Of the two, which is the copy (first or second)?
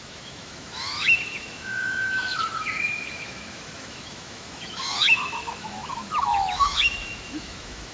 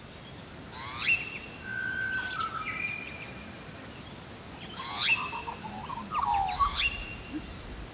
first